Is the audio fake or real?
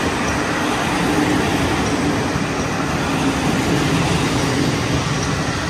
real